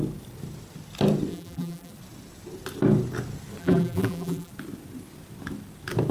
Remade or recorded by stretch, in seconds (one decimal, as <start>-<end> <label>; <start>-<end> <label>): 0.0-1.3 recorded; 1.3-1.9 remade; 1.9-3.6 recorded; 3.6-4.5 remade; 4.5-6.1 recorded